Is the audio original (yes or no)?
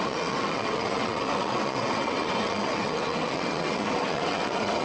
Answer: no